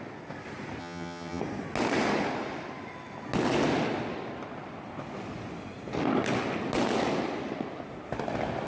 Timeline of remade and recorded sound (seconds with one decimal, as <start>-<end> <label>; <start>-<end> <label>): 0.0-0.8 recorded; 0.8-1.4 remade; 1.4-8.7 recorded